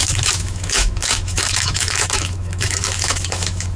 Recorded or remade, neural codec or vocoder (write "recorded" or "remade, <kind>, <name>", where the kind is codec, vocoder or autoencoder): remade, autoencoder, DAC-VAE